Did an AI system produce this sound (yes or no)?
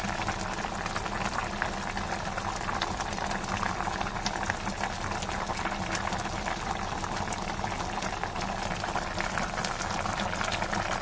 no